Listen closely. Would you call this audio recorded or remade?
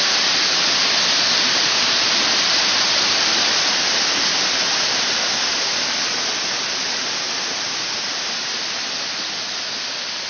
recorded